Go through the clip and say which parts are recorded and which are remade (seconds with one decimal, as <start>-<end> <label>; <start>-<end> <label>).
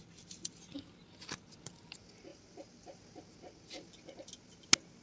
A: 0.0-0.6 remade; 0.6-2.3 recorded; 2.3-3.2 remade; 3.2-5.0 recorded